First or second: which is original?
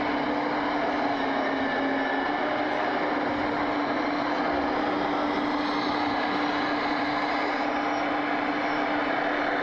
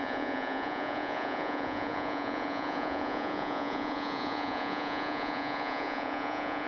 first